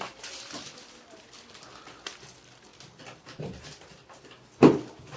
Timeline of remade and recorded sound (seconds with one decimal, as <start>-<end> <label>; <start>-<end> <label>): 0.0-5.2 remade